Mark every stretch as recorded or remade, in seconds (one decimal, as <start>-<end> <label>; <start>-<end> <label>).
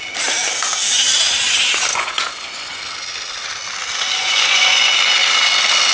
0.0-1.9 recorded; 1.9-2.8 remade; 2.8-4.2 recorded; 4.2-4.9 remade; 4.9-5.9 recorded